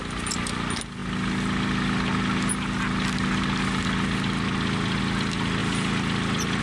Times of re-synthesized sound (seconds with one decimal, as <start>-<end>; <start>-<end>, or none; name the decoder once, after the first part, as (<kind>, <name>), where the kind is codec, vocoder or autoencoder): none